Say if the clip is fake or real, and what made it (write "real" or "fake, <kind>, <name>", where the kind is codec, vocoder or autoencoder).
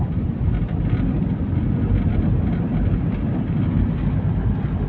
real